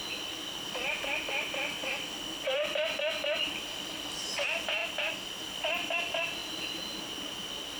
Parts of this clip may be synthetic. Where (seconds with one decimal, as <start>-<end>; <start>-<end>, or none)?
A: 1.8-3.8